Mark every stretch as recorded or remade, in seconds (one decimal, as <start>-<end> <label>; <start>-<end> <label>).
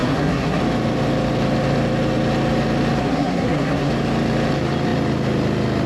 0.0-0.6 remade; 0.6-3.0 recorded; 3.0-3.9 remade; 3.9-5.9 recorded